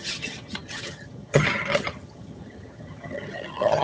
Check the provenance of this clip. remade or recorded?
remade